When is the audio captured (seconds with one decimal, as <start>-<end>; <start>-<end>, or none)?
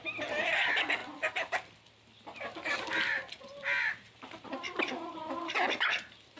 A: 0.0-6.4